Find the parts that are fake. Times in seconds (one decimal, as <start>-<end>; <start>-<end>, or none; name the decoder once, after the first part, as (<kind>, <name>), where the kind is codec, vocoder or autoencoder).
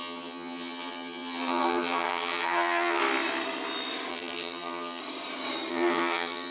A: 0.0-3.0 (vocoder, HiFi-GAN); 4.1-5.0; 5.7-6.5